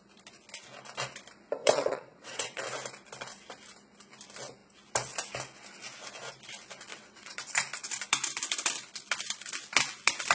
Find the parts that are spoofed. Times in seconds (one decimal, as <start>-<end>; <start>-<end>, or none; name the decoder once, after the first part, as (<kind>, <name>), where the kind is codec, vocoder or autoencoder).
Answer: 1.6-2.6 (vocoder, WaveNeXt); 6.9-7.4

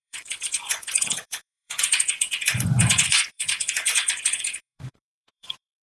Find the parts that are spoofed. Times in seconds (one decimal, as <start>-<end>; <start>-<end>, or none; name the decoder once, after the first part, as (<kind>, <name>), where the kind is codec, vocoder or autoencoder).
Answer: 0.0-5.8 (vocoder, Vocos)

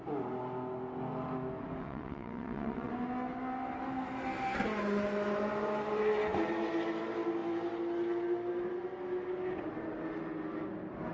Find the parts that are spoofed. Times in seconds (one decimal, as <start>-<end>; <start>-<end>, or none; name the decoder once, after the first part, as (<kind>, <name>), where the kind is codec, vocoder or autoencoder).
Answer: 1.8-2.9 (vocoder, WaveNeXt)

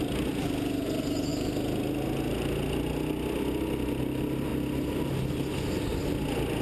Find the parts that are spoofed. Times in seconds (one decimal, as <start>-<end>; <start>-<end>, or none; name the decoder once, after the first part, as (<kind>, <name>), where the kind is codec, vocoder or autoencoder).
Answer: none

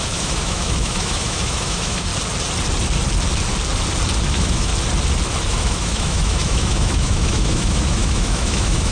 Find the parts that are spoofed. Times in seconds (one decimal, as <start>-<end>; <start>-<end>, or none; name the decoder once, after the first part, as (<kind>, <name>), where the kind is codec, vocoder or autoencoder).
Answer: 0.0-2.1 (autoencoder, DAC-VAE); 4.3-4.7; 5.5-8.9

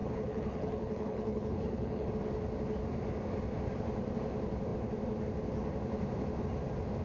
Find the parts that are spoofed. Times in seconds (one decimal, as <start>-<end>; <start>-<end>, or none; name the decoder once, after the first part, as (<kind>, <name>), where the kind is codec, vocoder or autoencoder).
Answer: 0.0-2.1 (codec, HILCodec)